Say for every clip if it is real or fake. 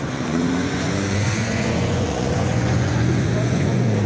fake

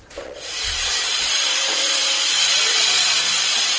fake